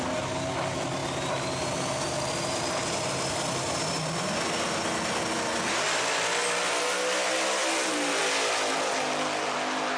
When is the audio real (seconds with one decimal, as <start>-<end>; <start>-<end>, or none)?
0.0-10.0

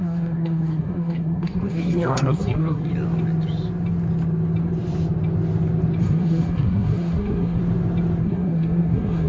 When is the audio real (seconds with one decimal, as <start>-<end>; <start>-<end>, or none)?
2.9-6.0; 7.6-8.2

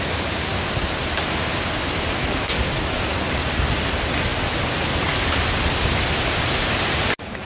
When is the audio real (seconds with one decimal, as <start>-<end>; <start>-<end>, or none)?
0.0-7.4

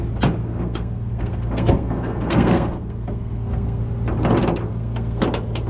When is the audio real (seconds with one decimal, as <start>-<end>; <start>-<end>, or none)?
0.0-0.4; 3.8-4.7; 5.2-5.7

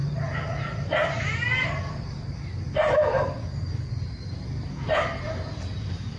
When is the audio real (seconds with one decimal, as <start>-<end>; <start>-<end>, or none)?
0.0-6.2